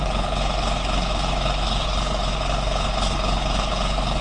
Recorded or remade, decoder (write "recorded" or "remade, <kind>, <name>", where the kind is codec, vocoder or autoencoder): remade, codec, HILCodec